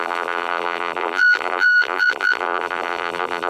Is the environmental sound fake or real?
fake